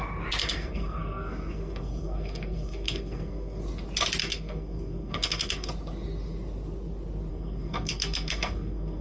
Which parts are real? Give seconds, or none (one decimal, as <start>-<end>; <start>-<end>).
0.0-0.4; 3.6-4.2; 5.7-7.3